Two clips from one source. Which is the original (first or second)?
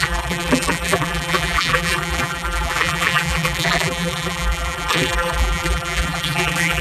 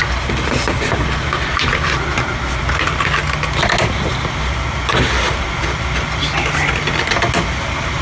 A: second